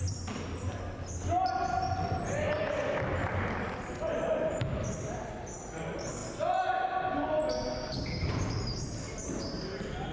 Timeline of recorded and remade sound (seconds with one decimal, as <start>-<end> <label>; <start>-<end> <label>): 0.0-10.1 recorded